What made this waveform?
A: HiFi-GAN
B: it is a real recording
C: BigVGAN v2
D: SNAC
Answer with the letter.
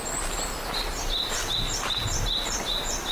B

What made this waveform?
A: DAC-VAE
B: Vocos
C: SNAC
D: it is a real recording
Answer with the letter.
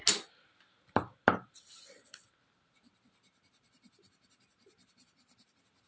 D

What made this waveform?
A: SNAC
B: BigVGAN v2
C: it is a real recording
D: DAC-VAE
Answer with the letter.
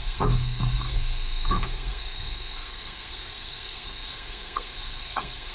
A